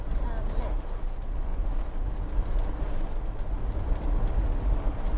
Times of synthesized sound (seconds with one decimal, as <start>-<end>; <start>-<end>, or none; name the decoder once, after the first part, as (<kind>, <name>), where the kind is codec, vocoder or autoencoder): none